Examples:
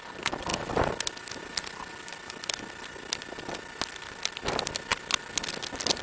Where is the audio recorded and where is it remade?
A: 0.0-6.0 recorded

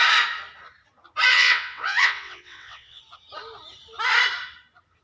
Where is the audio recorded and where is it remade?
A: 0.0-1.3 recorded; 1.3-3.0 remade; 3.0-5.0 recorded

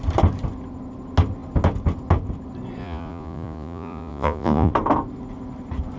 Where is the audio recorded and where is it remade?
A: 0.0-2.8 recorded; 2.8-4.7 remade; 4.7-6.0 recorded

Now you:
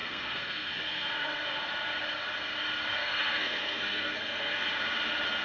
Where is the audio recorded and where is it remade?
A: 0.0-1.4 remade; 1.4-3.0 recorded; 3.0-4.7 remade; 4.7-5.4 recorded